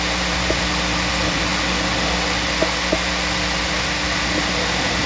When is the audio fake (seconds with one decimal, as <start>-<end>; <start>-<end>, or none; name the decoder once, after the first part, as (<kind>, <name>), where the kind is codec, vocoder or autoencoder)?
none